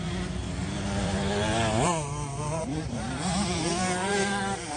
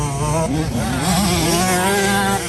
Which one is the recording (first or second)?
second